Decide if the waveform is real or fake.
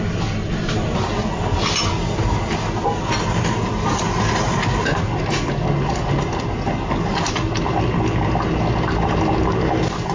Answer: real